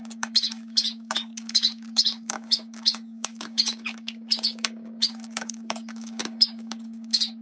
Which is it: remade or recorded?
remade